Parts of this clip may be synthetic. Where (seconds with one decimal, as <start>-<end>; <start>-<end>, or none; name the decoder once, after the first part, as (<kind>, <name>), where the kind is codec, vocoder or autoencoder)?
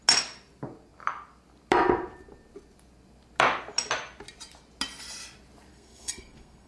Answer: 5.7-6.7 (codec, SNAC)